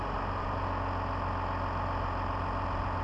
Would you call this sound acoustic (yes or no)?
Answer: yes